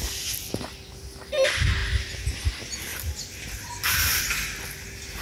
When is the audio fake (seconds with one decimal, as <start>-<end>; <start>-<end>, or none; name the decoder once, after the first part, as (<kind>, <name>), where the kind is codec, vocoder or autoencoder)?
2.9-4.2 (vocoder, BigVGAN v2)